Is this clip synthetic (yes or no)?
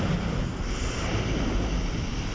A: no